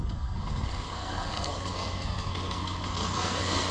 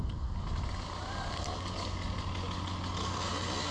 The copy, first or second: first